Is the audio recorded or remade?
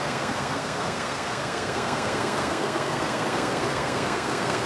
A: remade